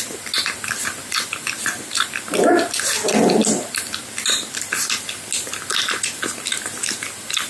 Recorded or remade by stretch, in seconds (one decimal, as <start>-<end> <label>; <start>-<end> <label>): 0.0-7.5 recorded